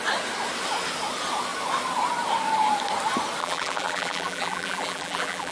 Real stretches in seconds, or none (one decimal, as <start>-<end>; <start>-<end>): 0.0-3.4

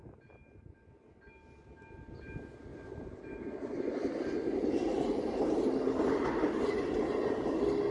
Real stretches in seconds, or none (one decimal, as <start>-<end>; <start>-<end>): 0.0-2.7; 3.8-4.9; 5.5-7.9

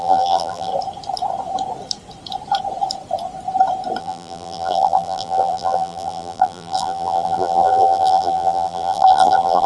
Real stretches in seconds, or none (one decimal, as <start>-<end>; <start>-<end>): 0.7-4.0

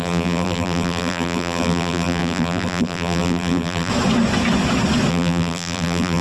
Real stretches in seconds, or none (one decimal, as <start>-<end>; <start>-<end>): 3.9-5.1